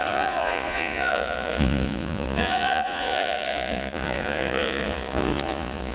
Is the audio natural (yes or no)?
no